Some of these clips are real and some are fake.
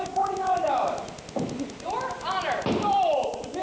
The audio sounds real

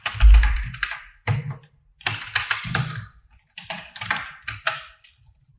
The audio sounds real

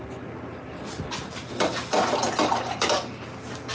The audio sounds real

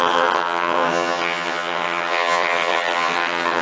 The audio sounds fake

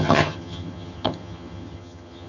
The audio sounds fake